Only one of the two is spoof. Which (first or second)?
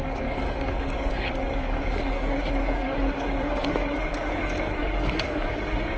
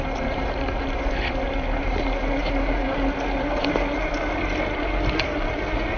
first